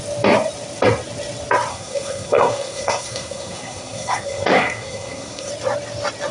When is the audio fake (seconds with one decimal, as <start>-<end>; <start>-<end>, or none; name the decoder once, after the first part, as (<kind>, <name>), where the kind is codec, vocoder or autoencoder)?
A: 1.7-5.5 (codec, SNAC)